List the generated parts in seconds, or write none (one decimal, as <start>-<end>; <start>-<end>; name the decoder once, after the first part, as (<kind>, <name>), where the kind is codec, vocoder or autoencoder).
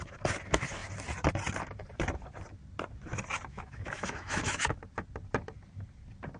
3.5-4.8 (autoencoder, DAC-VAE)